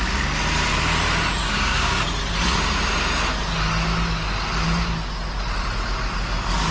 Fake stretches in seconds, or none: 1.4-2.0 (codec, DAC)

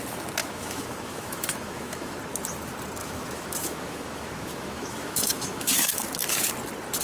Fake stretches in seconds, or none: 0.4-2.2 (autoencoder, DAC-VAE); 3.0-6.5

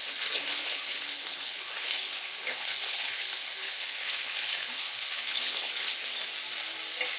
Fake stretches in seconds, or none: 0.0-6.2 (codec, HILCodec)

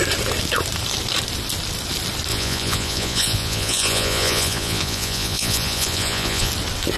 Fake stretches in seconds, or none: 2.3-6.5 (vocoder, Vocos)

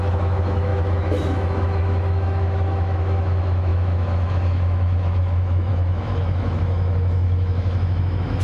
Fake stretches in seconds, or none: 0.0-8.4 (autoencoder, DAC-VAE)

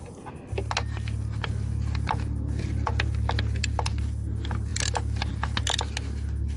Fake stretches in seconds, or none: none

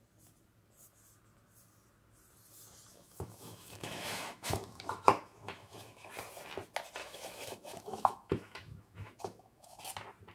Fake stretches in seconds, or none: 2.9-6.1 (autoencoder, DAC-VAE); 7.0-9.8

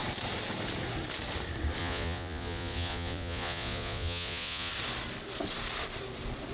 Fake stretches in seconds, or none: 1.8-4.7 (vocoder, Vocos)